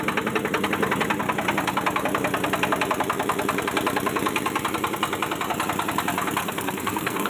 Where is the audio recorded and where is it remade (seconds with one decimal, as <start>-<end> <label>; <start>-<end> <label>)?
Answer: 0.0-6.4 recorded; 6.4-7.3 remade